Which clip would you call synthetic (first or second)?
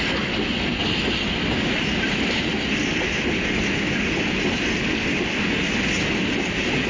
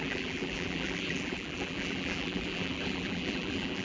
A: second